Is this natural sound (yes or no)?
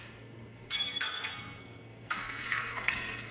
no